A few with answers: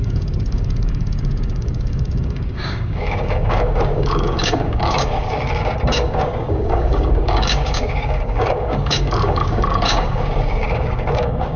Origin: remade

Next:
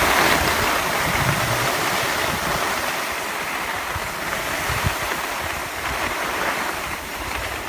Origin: remade